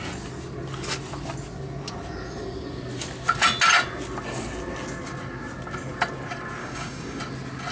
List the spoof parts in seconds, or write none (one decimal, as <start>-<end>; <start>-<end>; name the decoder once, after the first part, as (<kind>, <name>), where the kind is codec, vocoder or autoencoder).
6.6-7.2 (codec, DAC)